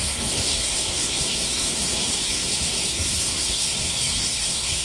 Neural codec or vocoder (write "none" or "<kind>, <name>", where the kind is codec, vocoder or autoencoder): codec, SNAC